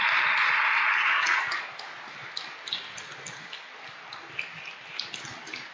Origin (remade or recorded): recorded